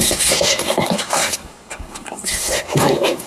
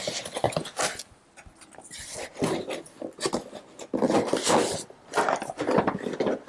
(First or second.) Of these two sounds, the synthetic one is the first